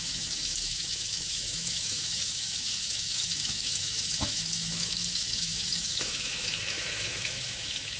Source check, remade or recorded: remade